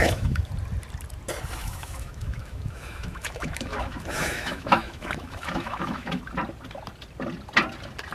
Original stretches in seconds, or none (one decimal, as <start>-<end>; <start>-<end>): 0.5-1.6; 6.2-8.1